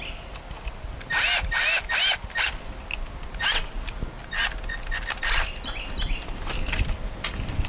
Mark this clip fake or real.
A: real